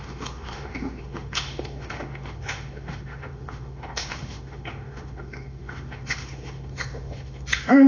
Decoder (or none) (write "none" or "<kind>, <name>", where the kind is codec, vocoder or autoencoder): autoencoder, DAC-VAE